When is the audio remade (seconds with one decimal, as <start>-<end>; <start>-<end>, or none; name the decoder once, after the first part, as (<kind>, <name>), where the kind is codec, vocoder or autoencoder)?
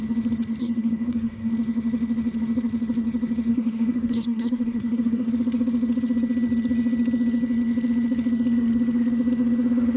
0.6-1.5 (codec, SNAC); 3.5-5.3